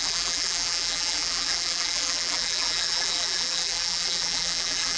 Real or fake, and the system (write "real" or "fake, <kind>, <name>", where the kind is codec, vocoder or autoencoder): fake, vocoder, BigVGAN v2